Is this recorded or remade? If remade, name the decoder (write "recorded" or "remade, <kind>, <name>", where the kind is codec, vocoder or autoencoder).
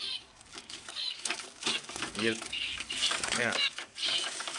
remade, codec, DAC